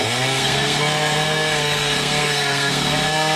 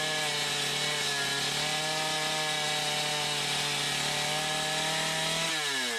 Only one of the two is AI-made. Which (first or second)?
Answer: first